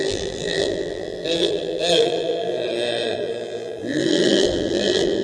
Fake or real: fake